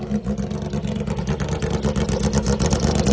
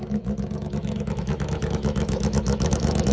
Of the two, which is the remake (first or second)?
second